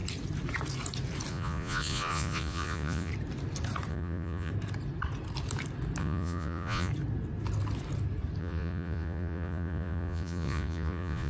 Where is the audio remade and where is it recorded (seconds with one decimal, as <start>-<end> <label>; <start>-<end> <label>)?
0.0-1.3 recorded; 1.3-3.1 remade; 3.1-3.9 recorded; 3.9-4.5 remade; 4.5-6.0 recorded; 6.0-6.9 remade; 6.9-8.4 recorded; 8.4-11.3 remade